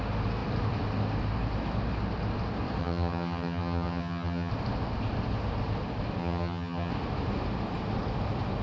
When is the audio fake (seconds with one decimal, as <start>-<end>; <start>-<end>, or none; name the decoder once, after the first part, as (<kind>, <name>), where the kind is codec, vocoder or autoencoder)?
2.8-4.5 (vocoder, HiFi-GAN); 6.2-6.9